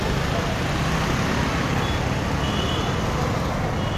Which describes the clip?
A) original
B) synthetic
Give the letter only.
A